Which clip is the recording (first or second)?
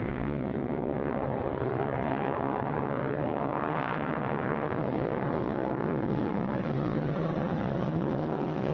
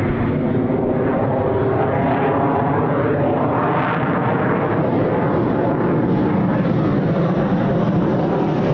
second